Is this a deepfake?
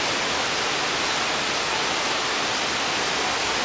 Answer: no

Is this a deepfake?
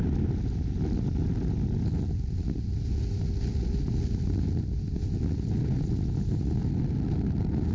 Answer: no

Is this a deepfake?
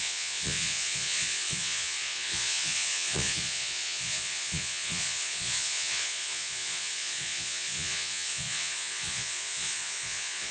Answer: yes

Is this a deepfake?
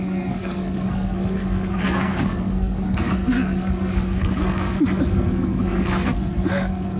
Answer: yes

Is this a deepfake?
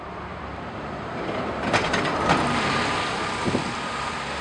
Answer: yes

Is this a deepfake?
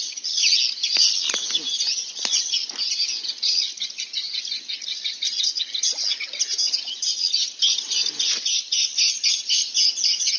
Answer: no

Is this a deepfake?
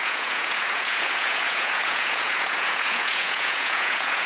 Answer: yes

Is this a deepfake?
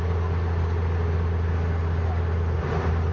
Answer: no